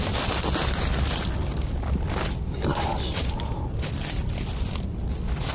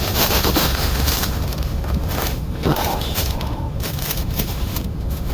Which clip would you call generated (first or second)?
second